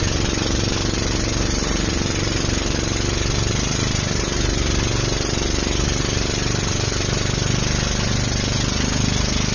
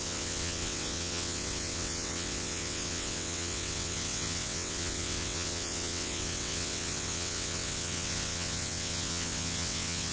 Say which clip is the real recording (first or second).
first